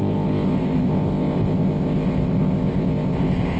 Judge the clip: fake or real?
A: fake